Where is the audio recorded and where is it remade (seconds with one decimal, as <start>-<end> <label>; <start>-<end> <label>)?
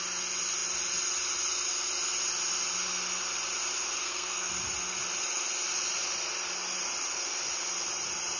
0.0-4.0 recorded; 4.0-4.5 remade; 4.5-8.4 recorded